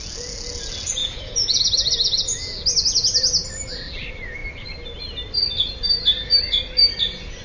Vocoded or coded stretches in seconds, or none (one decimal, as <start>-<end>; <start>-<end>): 1.0-1.6